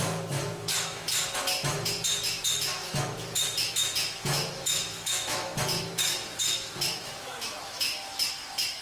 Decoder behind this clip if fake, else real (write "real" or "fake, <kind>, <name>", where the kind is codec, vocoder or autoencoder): fake, autoencoder, DAC-VAE